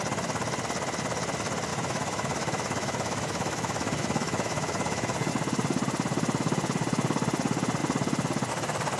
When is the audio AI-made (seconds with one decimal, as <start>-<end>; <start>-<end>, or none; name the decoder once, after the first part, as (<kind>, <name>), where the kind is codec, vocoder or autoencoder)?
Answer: 1.7-5.3 (autoencoder, DAC-VAE)